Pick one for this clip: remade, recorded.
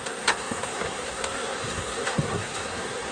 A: remade